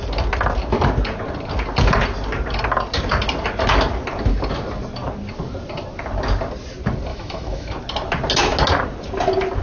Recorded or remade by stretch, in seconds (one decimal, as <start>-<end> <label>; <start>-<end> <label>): 0.0-7.1 recorded; 7.1-7.7 remade; 7.7-9.6 recorded